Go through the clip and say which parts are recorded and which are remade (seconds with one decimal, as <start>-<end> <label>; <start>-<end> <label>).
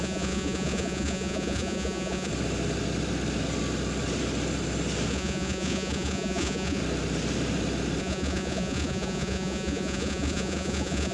0.0-2.3 remade; 2.3-5.1 recorded; 5.1-6.8 remade; 6.8-8.0 recorded; 8.0-11.1 remade